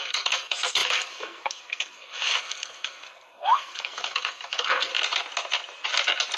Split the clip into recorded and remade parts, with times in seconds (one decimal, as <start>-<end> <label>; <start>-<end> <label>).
0.0-4.9 remade; 4.9-6.4 recorded